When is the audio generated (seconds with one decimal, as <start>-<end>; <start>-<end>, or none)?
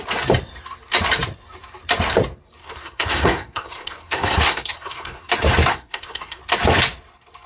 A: 2.6-5.3; 5.7-6.4